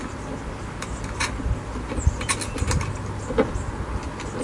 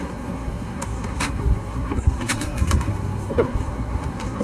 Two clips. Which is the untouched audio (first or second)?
first